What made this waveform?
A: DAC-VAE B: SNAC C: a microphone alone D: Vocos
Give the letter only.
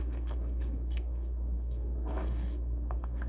B